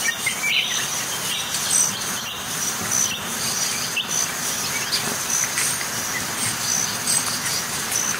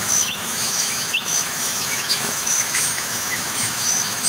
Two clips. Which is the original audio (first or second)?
first